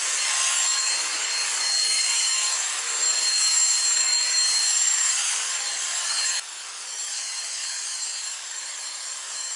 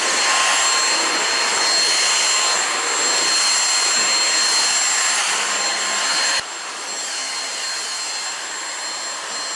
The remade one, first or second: first